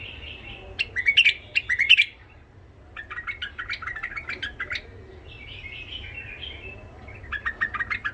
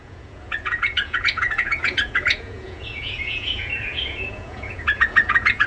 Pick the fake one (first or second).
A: second